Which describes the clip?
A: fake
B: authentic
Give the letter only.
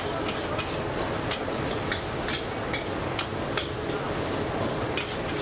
B